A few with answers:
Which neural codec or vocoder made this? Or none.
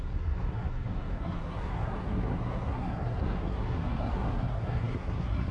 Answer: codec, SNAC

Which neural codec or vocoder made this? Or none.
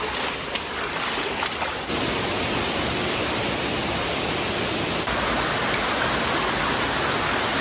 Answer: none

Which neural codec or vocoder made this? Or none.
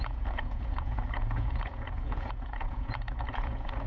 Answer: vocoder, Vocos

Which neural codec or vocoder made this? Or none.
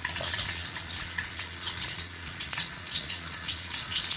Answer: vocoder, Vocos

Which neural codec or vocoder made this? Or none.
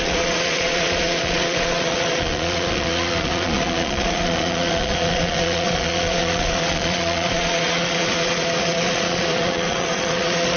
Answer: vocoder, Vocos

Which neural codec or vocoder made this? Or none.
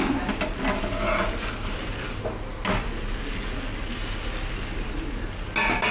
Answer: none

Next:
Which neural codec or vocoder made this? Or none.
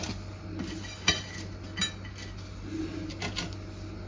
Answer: none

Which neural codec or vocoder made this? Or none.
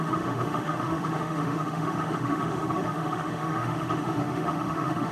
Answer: autoencoder, DAC-VAE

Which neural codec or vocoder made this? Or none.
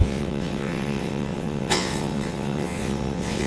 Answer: vocoder, WaveNeXt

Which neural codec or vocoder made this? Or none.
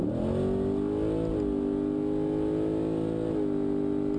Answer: none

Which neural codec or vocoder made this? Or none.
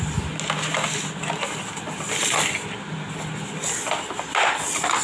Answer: none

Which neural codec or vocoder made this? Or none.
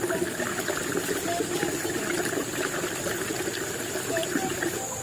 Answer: none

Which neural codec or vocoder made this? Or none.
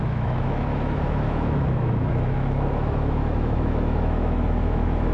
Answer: autoencoder, DAC-VAE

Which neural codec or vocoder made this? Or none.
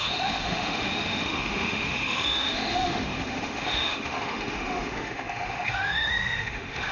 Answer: autoencoder, DAC-VAE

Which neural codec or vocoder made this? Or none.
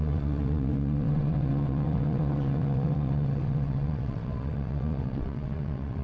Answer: vocoder, WaveNeXt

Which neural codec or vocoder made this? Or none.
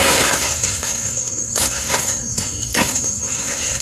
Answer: codec, SNAC